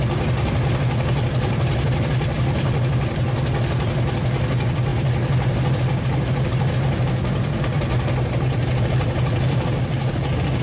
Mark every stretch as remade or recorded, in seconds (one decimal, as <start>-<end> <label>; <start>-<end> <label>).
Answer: 0.0-10.6 recorded

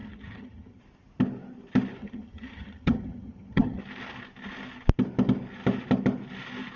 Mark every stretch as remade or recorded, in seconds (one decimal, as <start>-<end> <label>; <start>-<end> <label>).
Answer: 0.0-0.8 remade; 0.8-2.0 recorded; 2.0-3.8 remade; 3.8-6.8 recorded

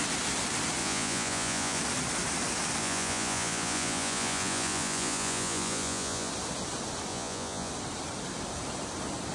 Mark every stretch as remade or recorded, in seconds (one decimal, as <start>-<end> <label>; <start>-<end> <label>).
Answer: 0.0-0.8 recorded; 0.8-1.8 remade; 1.8-2.8 recorded; 2.8-6.3 remade; 6.3-7.1 recorded; 7.1-7.7 remade; 7.7-9.3 recorded

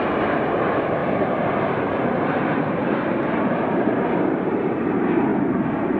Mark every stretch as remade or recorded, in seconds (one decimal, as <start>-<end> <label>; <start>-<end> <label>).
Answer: 0.0-6.0 remade

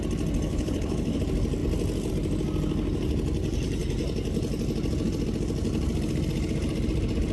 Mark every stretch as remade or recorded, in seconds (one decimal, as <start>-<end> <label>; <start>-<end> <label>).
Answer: 0.0-0.5 recorded; 0.5-1.2 remade; 1.2-7.3 recorded

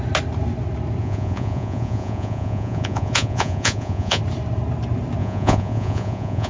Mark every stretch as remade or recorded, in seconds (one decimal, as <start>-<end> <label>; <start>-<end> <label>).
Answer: 0.0-1.0 recorded; 1.0-4.2 remade; 4.2-5.2 recorded; 5.2-6.5 remade

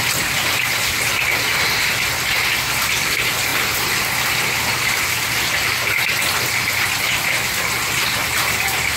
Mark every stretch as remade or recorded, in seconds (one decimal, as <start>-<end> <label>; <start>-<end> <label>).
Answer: 0.0-9.0 recorded

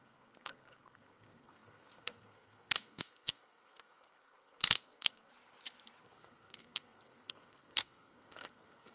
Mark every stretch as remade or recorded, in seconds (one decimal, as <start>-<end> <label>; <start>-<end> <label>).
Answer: 0.0-5.3 remade; 5.3-6.0 recorded; 6.0-8.9 remade